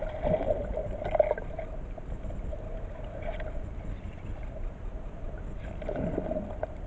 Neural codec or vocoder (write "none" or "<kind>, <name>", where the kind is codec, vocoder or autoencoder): none